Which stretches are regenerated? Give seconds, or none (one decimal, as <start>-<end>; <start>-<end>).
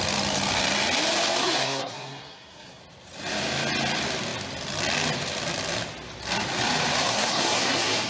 1.4-2.8; 7.1-8.1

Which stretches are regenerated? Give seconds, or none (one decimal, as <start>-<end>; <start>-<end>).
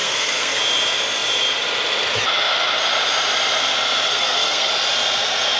0.0-0.6; 4.1-4.7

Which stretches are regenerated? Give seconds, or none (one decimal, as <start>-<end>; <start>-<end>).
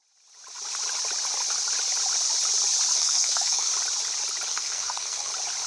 2.9-3.7; 4.5-5.3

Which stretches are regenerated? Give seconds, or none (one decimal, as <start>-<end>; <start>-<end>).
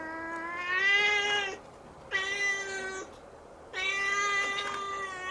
none